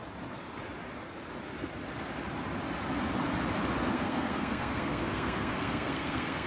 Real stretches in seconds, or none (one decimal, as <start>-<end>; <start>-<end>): 0.0-3.9

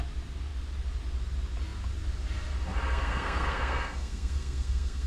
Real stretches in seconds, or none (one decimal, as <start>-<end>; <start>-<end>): 0.0-2.9

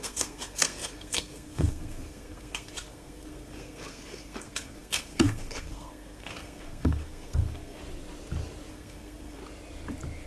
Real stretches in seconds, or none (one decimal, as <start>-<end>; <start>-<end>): 7.8-8.7; 9.4-10.3

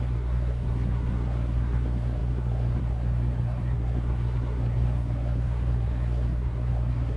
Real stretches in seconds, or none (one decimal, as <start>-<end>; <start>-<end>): none

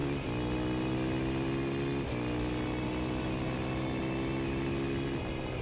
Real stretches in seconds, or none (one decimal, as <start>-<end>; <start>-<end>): 0.0-5.6

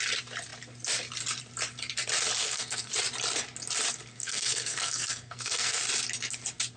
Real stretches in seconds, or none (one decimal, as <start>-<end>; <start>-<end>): 0.0-2.4; 2.9-4.1; 5.8-6.8